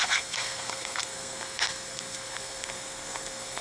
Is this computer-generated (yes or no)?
yes